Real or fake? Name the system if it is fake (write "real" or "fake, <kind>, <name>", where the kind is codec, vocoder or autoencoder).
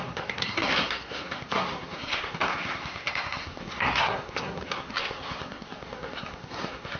fake, codec, SNAC